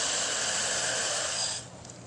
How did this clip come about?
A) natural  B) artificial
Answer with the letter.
A